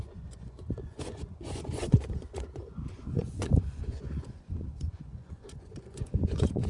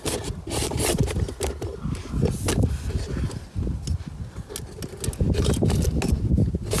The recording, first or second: second